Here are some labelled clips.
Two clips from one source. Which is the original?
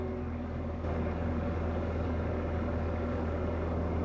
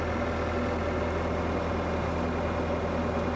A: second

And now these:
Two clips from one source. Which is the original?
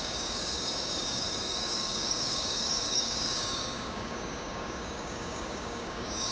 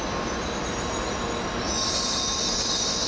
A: second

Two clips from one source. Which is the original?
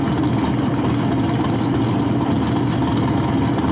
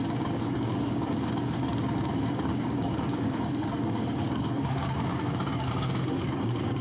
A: first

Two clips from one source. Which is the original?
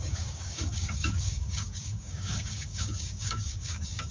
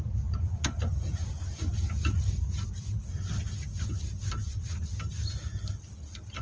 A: second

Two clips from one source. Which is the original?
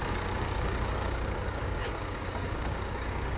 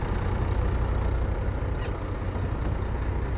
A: second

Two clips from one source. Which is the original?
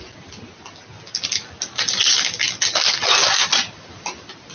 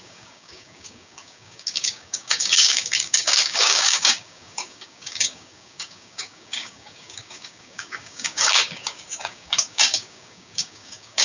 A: first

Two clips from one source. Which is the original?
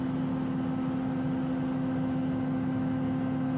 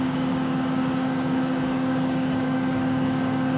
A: first